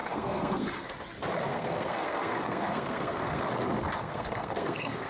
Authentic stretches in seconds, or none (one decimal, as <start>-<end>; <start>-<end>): 0.9-1.5; 3.5-4.0